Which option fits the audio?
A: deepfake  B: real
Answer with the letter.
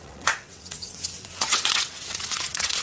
A